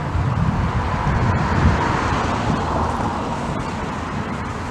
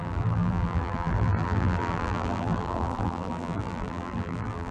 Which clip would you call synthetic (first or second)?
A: second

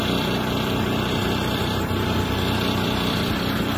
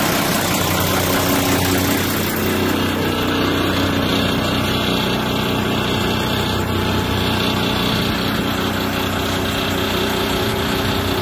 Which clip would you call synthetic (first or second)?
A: first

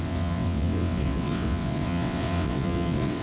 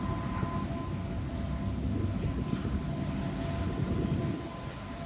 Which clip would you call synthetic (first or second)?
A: first